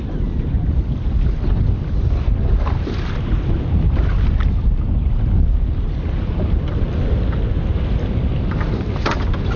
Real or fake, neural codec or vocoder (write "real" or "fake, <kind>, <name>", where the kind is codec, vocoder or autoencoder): real